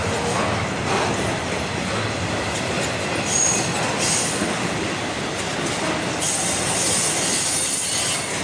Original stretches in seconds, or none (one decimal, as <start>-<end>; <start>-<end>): 0.0-2.5